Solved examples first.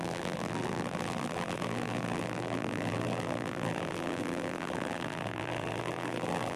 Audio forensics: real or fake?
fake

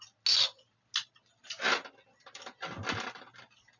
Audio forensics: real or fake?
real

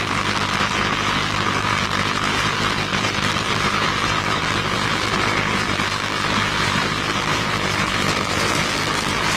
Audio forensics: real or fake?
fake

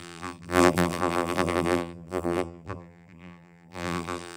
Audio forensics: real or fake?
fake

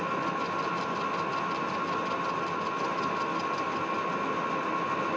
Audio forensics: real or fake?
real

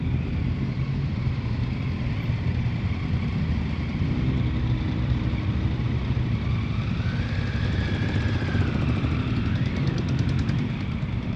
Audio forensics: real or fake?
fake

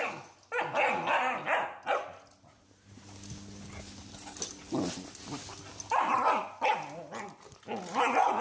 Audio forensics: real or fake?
real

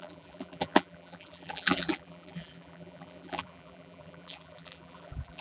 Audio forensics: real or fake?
fake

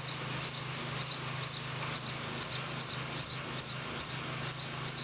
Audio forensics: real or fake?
real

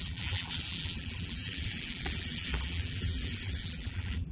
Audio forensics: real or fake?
fake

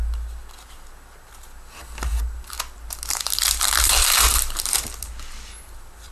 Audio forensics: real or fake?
real